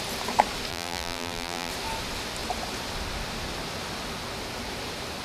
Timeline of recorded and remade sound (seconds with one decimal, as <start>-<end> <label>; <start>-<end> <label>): 0.0-0.7 recorded; 0.7-1.7 remade; 1.7-5.2 recorded